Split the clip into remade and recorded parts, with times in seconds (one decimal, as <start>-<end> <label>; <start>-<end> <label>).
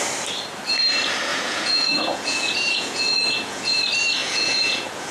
0.0-1.3 recorded; 1.3-3.8 remade; 3.8-4.2 recorded; 4.2-5.1 remade